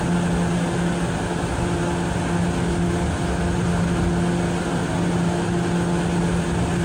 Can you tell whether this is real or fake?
real